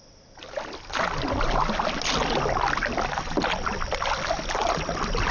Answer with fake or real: real